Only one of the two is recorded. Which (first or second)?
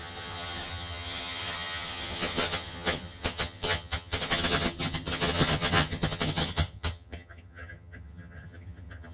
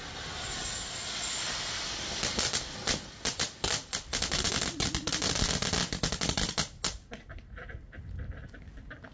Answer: second